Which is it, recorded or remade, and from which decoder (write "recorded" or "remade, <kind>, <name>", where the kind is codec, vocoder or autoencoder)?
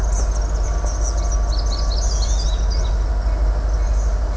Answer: recorded